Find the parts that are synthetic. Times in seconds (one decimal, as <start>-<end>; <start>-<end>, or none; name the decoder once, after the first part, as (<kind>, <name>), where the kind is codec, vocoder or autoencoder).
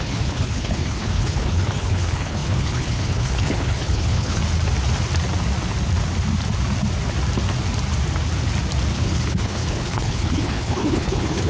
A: 0.0-4.4 (codec, HILCodec); 8.9-11.5